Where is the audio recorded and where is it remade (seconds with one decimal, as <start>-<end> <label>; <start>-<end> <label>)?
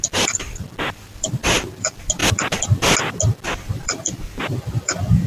0.0-2.2 remade; 2.2-3.5 recorded; 3.5-5.3 remade